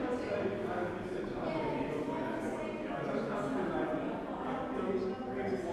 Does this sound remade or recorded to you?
recorded